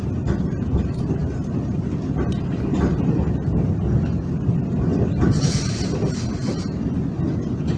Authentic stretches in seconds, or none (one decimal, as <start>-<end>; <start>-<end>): 0.0-4.9; 6.6-7.8